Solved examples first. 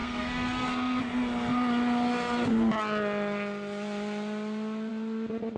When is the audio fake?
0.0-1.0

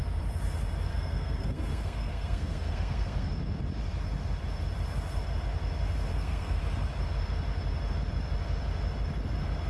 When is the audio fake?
0.9-3.3; 6.1-6.6

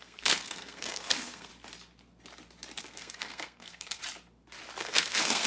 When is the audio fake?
0.0-1.5; 2.8-4.0; 4.8-5.5